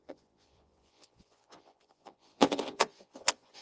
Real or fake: fake